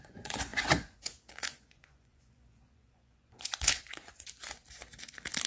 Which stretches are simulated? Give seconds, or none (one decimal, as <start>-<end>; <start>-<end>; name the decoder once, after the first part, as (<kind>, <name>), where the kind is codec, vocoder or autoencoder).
0.0-4.6 (vocoder, Vocos)